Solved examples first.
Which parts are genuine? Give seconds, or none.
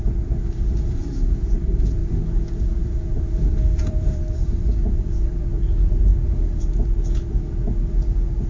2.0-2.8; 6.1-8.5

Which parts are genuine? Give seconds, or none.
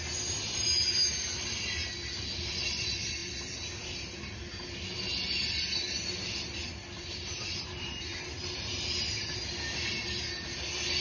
0.0-11.0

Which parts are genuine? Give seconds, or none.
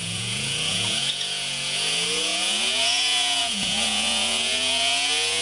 none